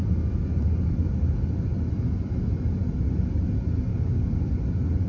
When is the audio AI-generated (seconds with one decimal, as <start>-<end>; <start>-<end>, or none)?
3.9-4.4